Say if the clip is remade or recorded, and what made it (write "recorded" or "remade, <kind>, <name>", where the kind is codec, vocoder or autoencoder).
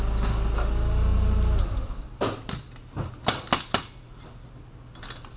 recorded